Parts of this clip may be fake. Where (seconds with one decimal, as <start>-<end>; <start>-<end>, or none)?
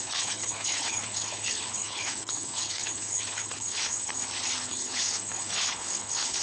0.0-4.1; 4.6-6.4